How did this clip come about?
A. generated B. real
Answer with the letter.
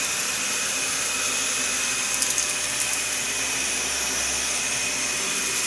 B